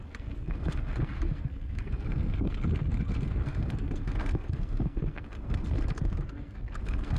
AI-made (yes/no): yes